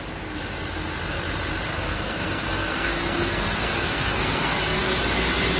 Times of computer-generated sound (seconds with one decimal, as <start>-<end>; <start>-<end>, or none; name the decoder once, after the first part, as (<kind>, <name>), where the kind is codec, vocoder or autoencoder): 1.7-4.8 (codec, SNAC)